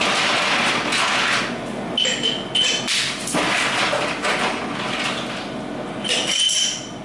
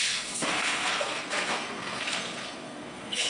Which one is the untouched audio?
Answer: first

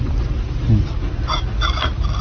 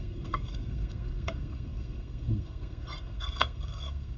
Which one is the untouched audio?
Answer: first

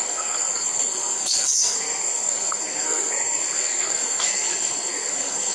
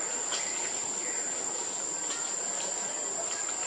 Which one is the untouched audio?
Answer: second